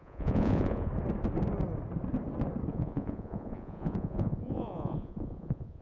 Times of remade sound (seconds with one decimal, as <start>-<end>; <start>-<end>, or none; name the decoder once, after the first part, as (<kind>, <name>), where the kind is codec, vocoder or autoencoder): 0.0-0.9 (vocoder, Vocos); 2.7-5.8